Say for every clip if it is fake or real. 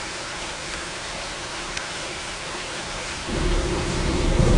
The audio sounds fake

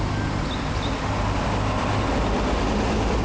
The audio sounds real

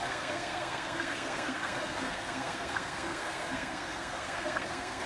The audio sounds fake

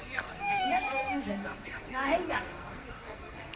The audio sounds fake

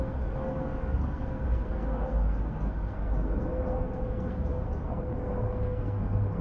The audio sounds fake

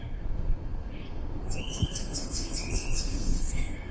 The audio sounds fake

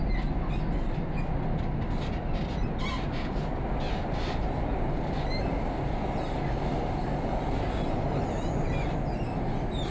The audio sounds real